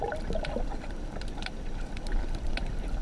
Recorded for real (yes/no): no